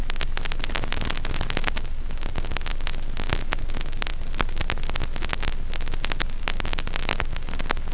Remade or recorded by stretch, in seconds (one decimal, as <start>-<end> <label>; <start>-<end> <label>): 0.0-7.9 recorded